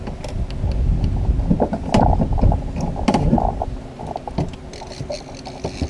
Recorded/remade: recorded